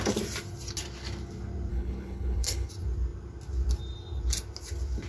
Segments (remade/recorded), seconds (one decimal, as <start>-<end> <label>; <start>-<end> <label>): 0.0-1.7 recorded; 1.7-2.7 remade; 2.7-5.1 recorded